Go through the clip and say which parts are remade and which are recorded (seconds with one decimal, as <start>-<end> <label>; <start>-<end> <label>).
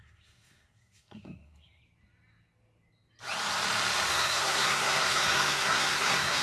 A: 0.0-1.8 remade; 1.8-4.1 recorded; 4.1-6.4 remade